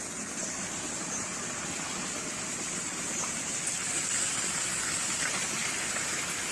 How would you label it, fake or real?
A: real